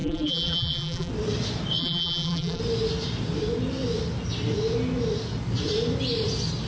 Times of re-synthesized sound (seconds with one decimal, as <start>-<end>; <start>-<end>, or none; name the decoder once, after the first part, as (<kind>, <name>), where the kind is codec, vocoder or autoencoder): 0.0-1.1 (vocoder, BigVGAN v2); 1.8-2.6